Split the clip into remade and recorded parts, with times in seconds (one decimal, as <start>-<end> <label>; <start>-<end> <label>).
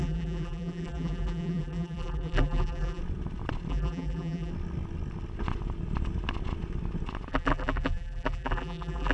0.0-3.0 remade; 3.0-3.7 recorded; 3.7-4.5 remade; 4.5-7.3 recorded; 7.3-9.1 remade